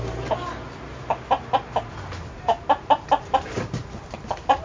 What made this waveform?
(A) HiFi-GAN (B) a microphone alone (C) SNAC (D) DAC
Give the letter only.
B